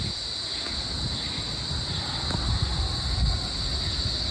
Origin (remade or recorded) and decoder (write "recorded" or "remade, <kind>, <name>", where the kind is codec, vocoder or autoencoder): recorded